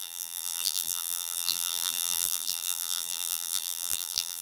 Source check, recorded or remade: remade